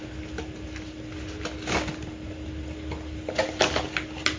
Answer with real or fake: real